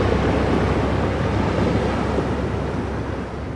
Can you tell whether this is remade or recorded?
recorded